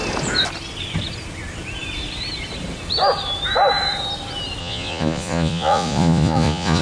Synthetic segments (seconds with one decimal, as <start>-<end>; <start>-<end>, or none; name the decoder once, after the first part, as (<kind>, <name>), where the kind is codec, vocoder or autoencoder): 4.6-6.8 (vocoder, Vocos)